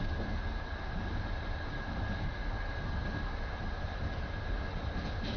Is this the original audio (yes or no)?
yes